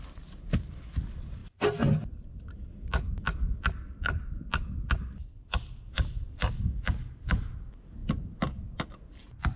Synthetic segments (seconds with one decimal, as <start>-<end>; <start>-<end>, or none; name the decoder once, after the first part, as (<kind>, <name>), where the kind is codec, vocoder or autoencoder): none